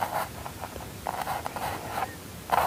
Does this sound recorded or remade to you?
remade